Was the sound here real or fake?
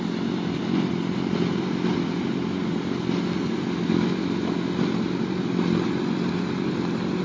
real